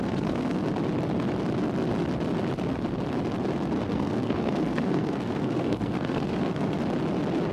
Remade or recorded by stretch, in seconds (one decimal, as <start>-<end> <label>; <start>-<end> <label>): 0.0-0.6 remade; 0.6-3.8 recorded; 3.8-6.8 remade; 6.8-7.5 recorded